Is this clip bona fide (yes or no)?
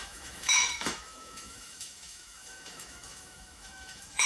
no